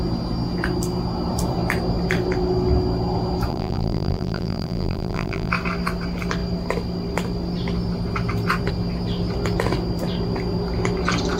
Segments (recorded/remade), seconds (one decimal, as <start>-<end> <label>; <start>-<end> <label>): 0.0-3.5 recorded; 3.5-5.5 remade; 5.5-11.4 recorded